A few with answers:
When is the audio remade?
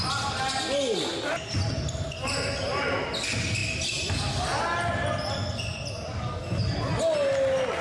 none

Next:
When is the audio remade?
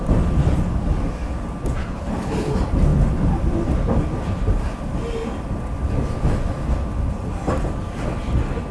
1.8-2.5 (codec, HILCodec)